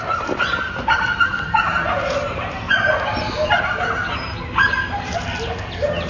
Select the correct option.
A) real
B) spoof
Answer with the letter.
A